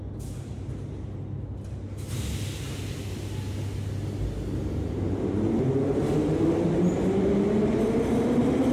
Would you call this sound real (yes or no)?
yes